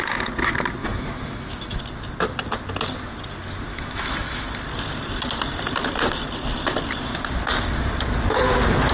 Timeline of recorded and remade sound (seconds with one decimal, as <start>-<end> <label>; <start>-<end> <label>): 0.0-0.8 recorded; 0.8-1.8 remade; 1.8-3.7 recorded; 3.7-4.5 remade; 4.5-8.9 recorded